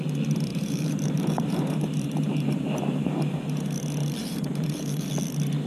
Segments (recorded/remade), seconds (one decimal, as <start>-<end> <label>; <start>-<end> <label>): 0.0-0.5 recorded; 0.5-3.4 remade; 3.4-4.2 recorded; 4.2-5.1 remade; 5.1-5.7 recorded

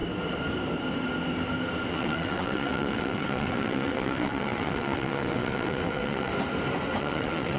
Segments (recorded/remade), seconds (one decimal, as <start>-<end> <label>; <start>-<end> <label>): 0.0-1.9 recorded; 1.9-6.3 remade; 6.3-7.0 recorded; 7.0-7.6 remade

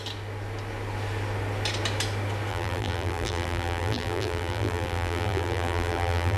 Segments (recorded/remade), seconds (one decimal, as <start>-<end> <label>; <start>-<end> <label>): 0.0-2.5 recorded; 2.5-6.4 remade

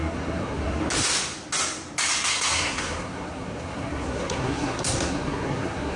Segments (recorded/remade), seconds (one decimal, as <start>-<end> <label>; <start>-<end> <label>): 0.0-0.8 remade; 0.8-2.3 recorded; 2.3-6.0 remade

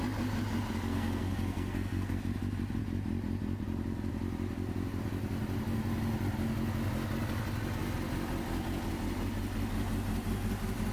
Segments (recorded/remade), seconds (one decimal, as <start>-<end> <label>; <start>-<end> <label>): 0.0-0.9 recorded; 0.9-2.2 remade; 2.2-10.9 recorded